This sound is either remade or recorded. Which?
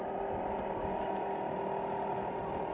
recorded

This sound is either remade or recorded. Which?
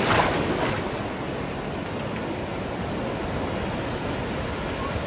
recorded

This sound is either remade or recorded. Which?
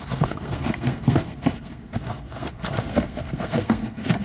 remade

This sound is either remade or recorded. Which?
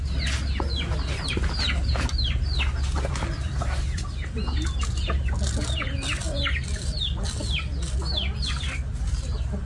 recorded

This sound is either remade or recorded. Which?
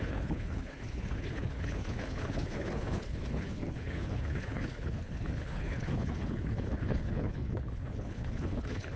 remade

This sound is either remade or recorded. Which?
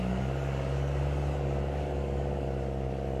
remade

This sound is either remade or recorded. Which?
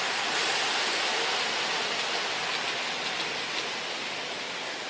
recorded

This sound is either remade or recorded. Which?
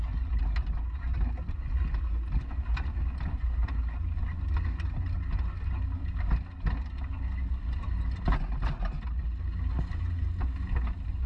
recorded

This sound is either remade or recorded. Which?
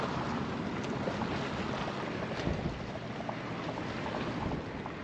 recorded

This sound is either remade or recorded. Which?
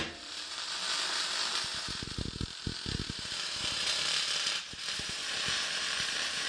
remade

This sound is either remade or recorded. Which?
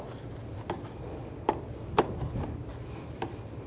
recorded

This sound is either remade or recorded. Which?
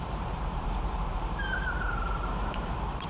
remade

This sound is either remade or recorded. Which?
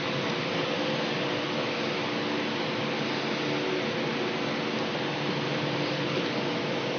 recorded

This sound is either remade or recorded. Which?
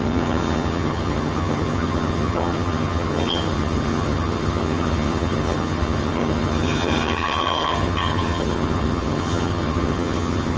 remade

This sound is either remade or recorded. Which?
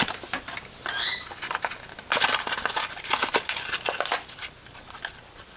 recorded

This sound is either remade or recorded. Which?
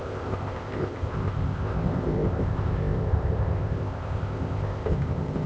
remade